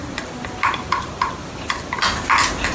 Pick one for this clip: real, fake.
fake